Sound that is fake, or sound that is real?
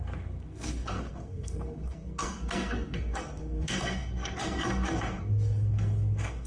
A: fake